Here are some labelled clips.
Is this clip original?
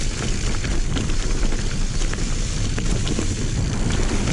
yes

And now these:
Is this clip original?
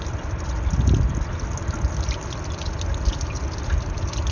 yes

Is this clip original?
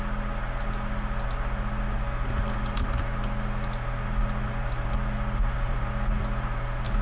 yes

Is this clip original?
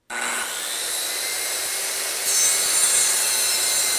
yes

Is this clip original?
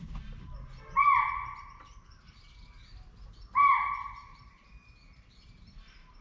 yes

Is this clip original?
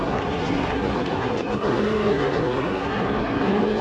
no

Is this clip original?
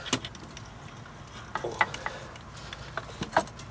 yes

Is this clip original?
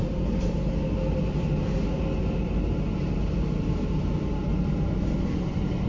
yes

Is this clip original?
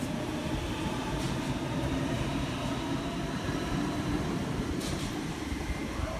no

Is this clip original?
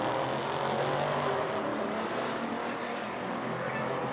yes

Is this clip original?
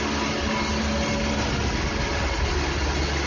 yes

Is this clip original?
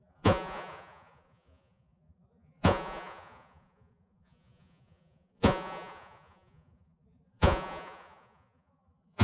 no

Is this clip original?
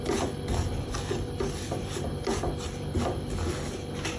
yes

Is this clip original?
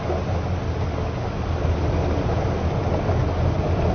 yes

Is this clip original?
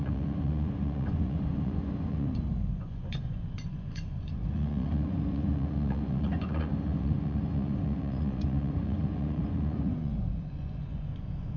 no